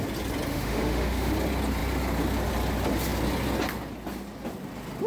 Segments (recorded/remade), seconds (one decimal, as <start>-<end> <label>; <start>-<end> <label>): 0.0-0.5 recorded; 0.5-1.3 remade; 1.3-5.1 recorded